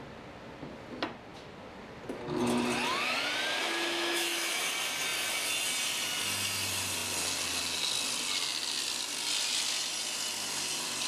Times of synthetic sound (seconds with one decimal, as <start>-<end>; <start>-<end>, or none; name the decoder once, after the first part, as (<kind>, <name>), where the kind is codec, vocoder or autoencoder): 3.6-4.6 (autoencoder, DAC-VAE)